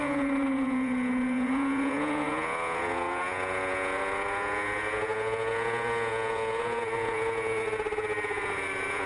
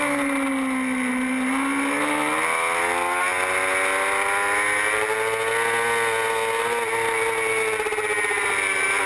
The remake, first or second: first